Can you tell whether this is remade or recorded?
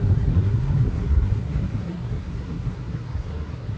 remade